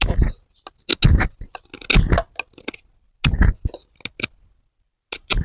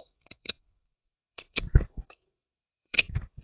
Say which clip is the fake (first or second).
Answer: second